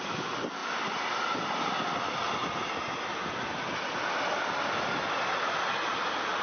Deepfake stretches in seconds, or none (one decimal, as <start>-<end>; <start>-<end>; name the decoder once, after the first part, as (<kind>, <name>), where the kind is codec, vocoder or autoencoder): none